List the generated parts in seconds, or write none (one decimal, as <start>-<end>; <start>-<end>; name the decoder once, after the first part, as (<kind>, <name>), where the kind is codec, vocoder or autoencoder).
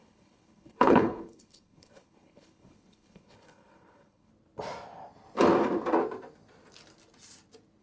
0.0-4.3 (codec, HILCodec)